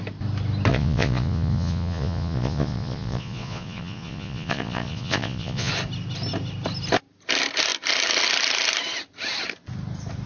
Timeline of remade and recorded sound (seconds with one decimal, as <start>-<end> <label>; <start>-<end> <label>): 0.0-0.7 recorded; 0.7-5.7 remade; 5.7-10.3 recorded